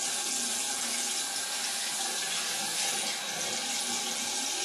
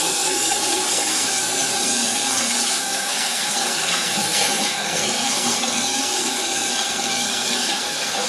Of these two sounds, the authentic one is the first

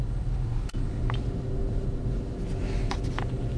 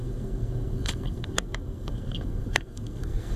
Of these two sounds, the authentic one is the first